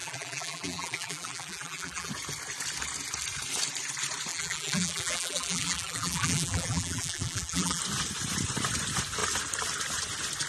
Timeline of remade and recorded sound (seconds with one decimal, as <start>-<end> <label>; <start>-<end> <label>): 0.0-2.1 remade; 2.1-4.3 recorded; 4.3-7.8 remade; 7.8-10.5 recorded